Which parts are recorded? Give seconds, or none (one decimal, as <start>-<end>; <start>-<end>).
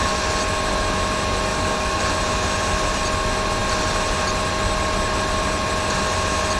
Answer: 0.0-1.5; 2.0-6.6